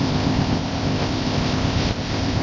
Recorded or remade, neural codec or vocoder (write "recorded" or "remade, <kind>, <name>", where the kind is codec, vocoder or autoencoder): remade, codec, ZipCodec